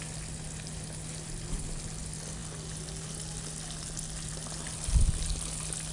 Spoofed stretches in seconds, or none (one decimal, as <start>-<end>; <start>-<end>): none